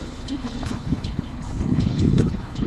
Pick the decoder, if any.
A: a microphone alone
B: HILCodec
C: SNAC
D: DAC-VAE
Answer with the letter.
B